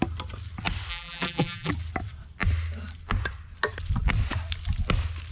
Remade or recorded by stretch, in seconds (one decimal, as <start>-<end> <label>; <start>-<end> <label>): 0.0-0.9 recorded; 0.9-1.7 remade; 1.7-5.3 recorded